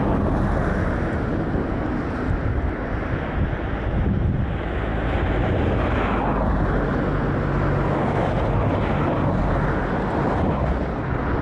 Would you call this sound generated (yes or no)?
no